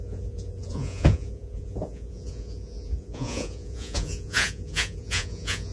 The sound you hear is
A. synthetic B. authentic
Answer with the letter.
A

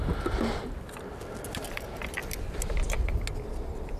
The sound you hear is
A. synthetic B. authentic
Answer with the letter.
B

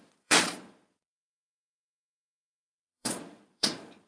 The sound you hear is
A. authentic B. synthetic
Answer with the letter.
B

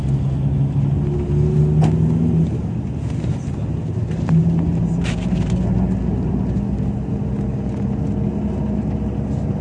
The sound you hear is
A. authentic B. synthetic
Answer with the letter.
A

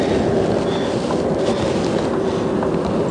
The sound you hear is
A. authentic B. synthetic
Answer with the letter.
A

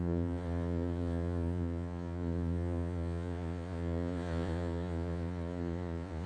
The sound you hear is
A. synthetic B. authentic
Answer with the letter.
A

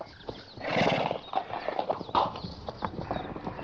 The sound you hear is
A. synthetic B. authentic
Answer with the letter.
B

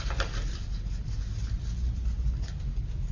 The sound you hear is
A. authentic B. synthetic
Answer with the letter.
A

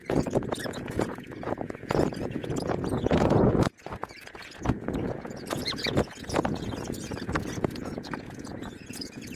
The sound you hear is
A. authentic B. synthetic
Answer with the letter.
B